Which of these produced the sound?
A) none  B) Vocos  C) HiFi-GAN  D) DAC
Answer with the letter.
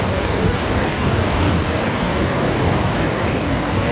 D